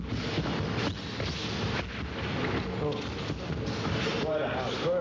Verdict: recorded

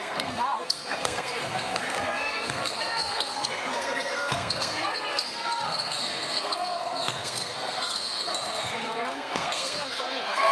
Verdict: remade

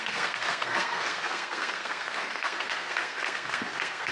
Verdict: remade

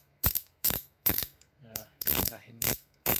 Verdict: remade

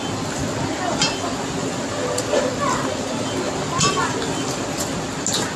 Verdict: recorded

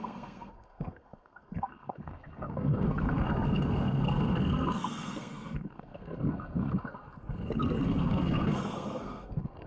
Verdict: remade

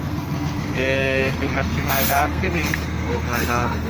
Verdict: remade